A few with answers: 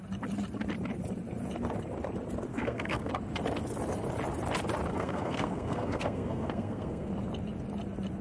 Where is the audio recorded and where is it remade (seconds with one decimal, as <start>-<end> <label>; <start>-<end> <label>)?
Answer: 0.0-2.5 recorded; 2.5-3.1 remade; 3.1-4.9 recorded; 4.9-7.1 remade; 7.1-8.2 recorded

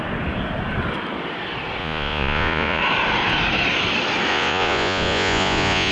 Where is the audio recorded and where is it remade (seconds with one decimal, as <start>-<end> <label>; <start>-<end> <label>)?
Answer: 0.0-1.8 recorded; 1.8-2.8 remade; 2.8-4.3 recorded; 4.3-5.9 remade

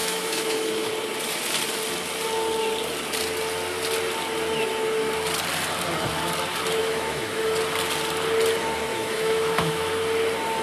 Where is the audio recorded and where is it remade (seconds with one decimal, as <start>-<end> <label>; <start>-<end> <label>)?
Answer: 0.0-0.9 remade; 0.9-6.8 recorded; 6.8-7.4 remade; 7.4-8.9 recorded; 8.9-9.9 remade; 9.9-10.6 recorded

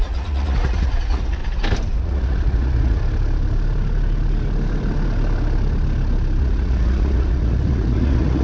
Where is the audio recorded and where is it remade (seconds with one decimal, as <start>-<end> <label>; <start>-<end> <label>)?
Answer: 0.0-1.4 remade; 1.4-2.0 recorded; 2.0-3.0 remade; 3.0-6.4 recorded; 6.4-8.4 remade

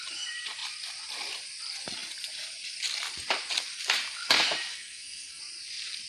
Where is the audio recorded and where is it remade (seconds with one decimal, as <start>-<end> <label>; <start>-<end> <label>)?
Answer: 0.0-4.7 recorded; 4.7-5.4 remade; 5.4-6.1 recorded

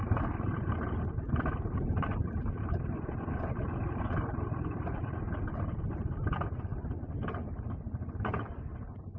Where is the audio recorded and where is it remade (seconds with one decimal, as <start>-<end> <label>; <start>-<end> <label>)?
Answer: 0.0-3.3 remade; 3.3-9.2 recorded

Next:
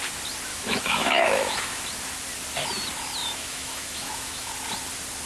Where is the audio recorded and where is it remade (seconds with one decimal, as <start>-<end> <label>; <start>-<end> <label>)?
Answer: 0.0-0.5 recorded; 0.5-1.8 remade; 1.8-3.2 recorded; 3.2-4.5 remade; 4.5-5.3 recorded